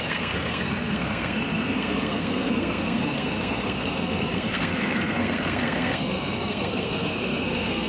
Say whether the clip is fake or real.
fake